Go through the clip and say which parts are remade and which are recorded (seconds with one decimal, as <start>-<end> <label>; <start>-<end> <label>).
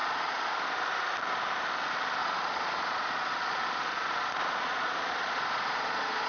0.0-0.5 remade; 0.5-2.2 recorded; 2.2-6.3 remade